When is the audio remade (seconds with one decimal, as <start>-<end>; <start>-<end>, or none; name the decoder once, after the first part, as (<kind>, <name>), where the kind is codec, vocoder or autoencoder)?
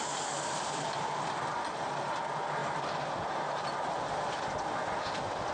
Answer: none